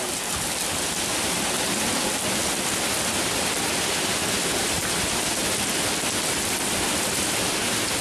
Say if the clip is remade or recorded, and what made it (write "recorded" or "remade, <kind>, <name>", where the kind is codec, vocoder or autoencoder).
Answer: remade, vocoder, BigVGAN v2